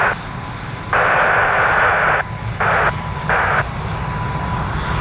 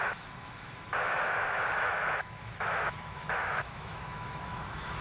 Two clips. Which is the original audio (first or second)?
first